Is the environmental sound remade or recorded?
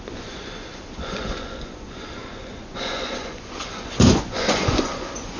remade